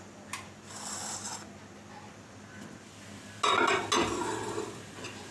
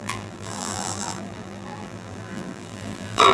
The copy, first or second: second